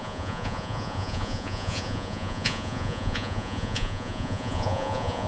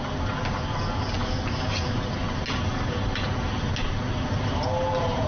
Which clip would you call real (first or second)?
second